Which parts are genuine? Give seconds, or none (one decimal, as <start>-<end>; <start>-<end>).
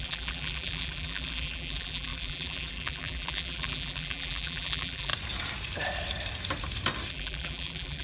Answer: 5.1-7.1